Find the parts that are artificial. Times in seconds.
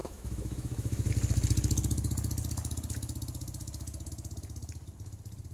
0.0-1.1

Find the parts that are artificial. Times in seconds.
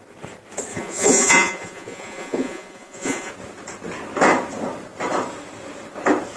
0.7-3.3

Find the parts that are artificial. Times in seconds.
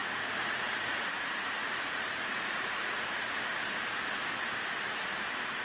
0.0-3.4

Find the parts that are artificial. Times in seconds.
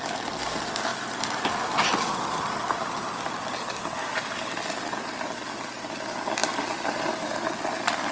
none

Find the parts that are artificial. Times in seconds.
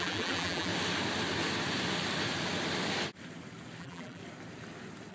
0.0-0.7; 3.8-4.2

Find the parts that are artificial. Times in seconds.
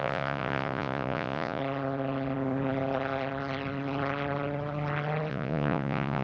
0.0-1.6; 5.3-6.2